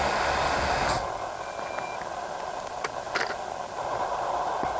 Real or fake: real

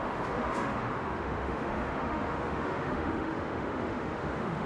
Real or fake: fake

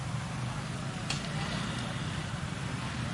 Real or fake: real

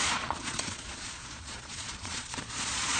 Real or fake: fake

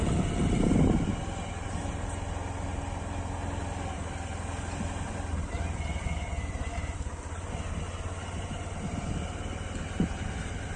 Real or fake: real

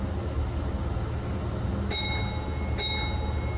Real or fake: real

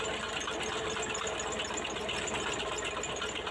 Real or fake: real